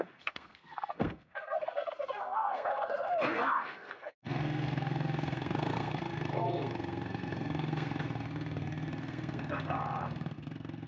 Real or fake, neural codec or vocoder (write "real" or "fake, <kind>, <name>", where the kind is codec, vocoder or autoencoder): fake, codec, SNAC